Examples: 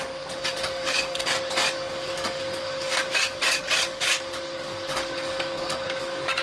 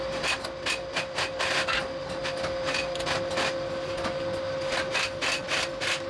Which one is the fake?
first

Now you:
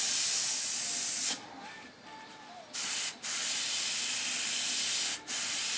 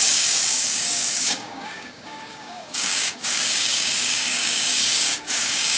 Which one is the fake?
second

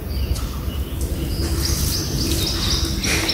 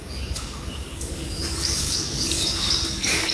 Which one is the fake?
second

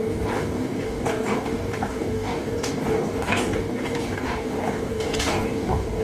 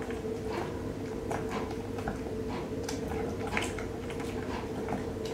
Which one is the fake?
first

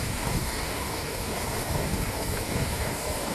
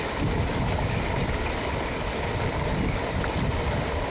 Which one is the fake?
first